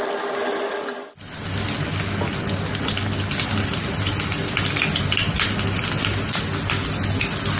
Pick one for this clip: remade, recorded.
recorded